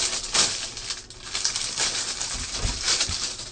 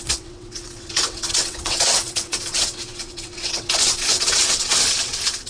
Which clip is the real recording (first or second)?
first